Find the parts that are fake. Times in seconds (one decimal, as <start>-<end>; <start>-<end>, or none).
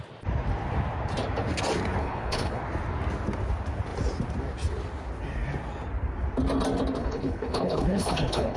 2.0-2.6; 7.0-8.6